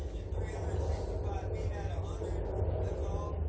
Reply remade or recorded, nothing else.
recorded